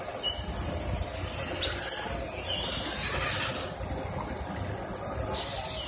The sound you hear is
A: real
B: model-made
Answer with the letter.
A